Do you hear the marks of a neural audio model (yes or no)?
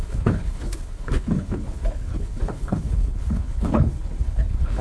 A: yes